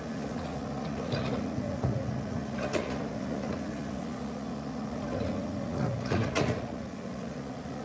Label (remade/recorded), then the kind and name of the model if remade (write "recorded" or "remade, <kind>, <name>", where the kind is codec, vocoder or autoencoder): remade, vocoder, Vocos